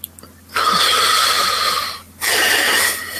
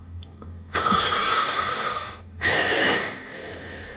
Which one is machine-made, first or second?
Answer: second